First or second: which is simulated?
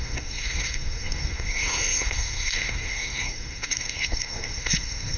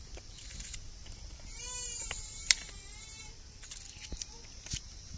first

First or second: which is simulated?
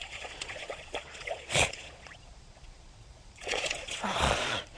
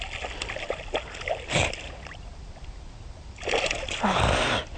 first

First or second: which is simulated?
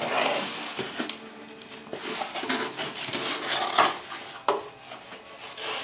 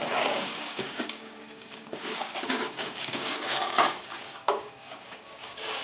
second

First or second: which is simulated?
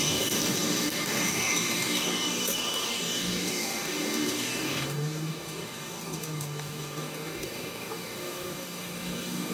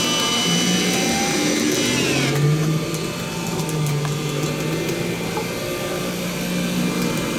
first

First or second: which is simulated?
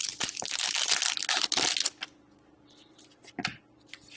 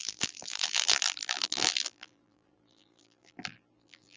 second